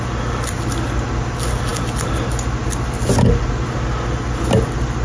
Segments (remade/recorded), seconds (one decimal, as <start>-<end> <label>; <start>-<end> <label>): 0.0-5.0 recorded